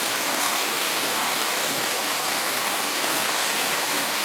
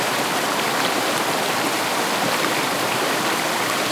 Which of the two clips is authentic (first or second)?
second